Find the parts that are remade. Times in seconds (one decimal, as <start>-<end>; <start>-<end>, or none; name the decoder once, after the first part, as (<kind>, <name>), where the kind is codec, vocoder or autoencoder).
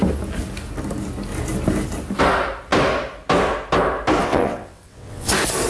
4.2-5.3 (vocoder, WaveNeXt)